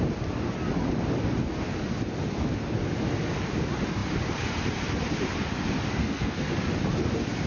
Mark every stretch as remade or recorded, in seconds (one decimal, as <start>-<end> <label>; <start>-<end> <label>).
0.0-6.0 recorded; 6.0-6.5 remade; 6.5-7.5 recorded